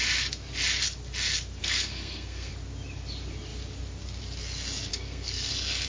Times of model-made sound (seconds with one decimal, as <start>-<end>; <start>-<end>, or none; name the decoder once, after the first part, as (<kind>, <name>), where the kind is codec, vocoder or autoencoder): 1.6-2.5 (codec, SNAC); 4.9-5.5